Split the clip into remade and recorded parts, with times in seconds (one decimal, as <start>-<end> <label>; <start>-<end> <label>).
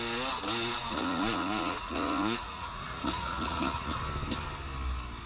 0.0-0.8 recorded; 0.8-4.0 remade; 4.0-5.3 recorded